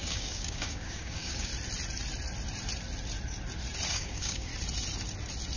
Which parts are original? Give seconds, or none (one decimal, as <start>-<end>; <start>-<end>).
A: 1.5-3.9; 4.5-5.6

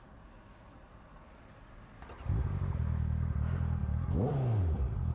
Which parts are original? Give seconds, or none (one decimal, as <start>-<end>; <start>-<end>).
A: 0.0-3.8; 4.6-5.1

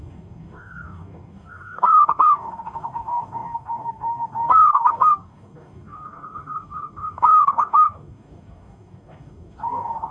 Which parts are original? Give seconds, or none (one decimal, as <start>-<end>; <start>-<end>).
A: none